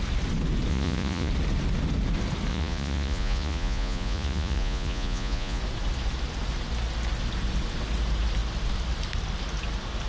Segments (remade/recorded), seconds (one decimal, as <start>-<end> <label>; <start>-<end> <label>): 0.0-0.7 recorded; 0.7-1.3 remade; 1.3-2.5 recorded; 2.5-5.6 remade; 5.6-10.1 recorded